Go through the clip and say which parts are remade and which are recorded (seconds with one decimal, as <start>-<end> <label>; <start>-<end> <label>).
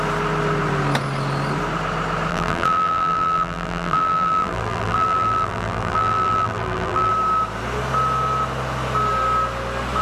0.0-2.3 recorded; 2.3-7.1 remade; 7.1-10.0 recorded